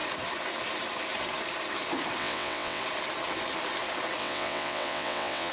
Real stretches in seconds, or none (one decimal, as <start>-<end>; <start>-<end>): 0.0-2.2; 2.8-4.2

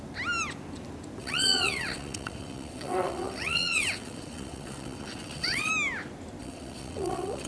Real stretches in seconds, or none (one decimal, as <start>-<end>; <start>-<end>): 0.0-1.2; 5.7-6.4

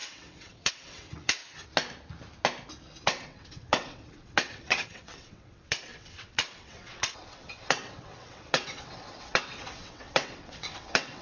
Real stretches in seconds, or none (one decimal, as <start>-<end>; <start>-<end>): 1.4-3.0

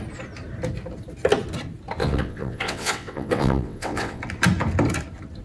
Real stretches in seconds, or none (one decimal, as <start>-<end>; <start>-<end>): 0.0-2.0; 4.2-5.4

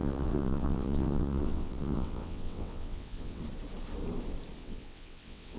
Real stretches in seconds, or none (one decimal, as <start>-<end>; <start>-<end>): 3.4-4.6

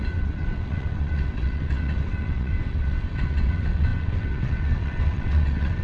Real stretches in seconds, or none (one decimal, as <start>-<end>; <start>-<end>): none

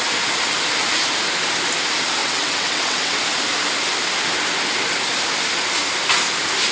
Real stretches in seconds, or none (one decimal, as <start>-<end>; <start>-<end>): 0.0-2.2; 3.1-6.7

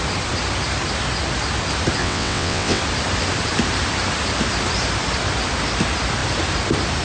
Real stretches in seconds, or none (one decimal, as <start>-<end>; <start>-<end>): 0.0-2.0; 2.8-7.0